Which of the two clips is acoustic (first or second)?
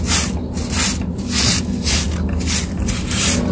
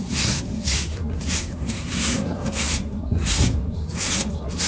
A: first